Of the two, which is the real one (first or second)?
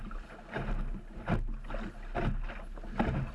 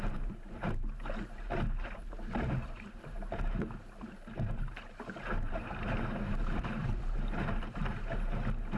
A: first